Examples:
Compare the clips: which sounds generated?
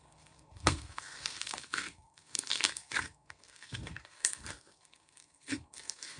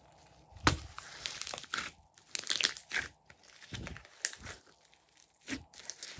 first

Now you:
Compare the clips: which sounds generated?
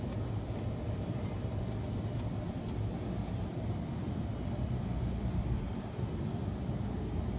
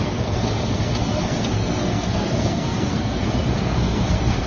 second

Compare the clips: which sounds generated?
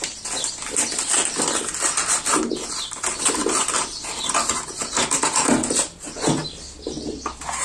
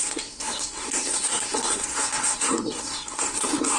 second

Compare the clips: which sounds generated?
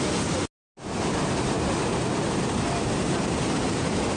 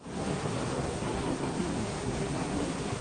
second